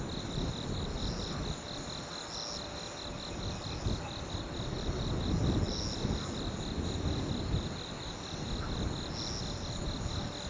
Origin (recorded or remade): recorded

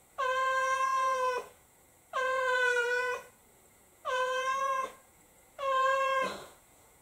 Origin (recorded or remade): remade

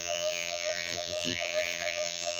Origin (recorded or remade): remade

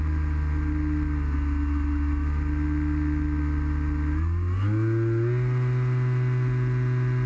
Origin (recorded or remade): recorded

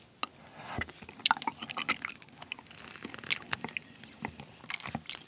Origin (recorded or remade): recorded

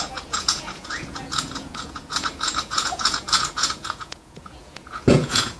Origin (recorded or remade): remade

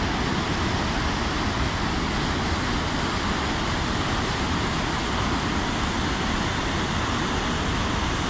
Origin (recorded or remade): recorded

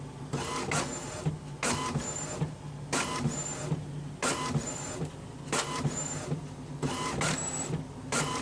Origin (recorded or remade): recorded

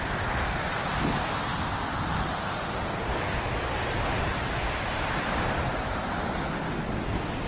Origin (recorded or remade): recorded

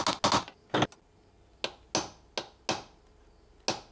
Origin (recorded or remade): recorded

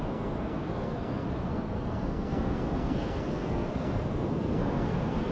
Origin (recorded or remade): remade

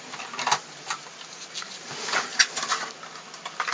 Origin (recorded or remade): recorded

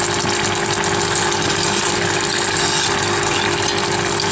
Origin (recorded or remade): recorded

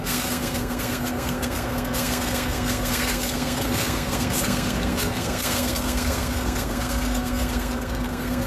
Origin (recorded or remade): remade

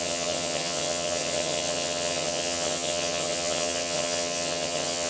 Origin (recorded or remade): remade